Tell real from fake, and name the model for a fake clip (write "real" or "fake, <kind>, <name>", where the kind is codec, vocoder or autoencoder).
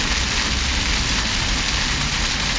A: real